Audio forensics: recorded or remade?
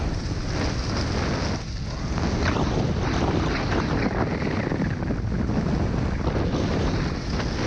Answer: recorded